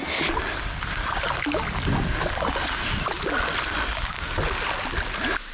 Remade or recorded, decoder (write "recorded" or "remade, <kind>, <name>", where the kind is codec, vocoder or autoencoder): recorded